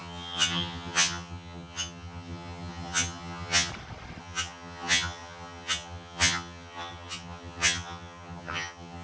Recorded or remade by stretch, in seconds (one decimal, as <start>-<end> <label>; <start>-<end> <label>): 0.0-3.7 remade; 3.7-4.2 recorded; 4.2-9.0 remade